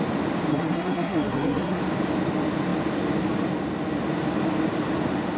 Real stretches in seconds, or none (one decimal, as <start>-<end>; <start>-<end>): 0.0-0.5; 1.8-5.4